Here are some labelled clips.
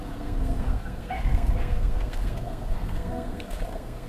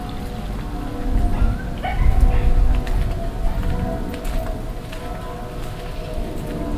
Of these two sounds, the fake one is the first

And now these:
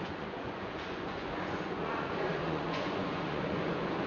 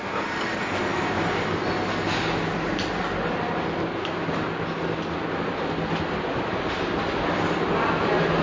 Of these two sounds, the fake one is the first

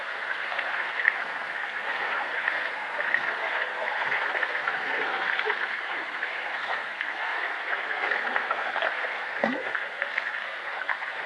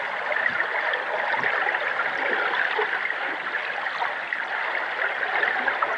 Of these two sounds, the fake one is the first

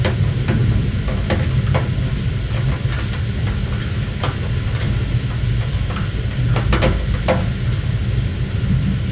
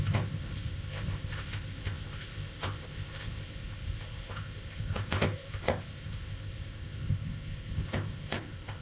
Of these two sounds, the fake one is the second